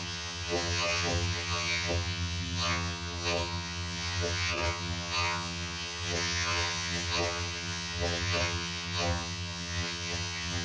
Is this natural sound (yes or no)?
no